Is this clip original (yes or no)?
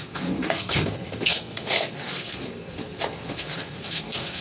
no